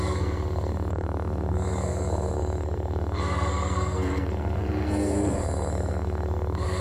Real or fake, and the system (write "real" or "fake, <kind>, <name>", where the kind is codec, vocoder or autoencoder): fake, codec, SNAC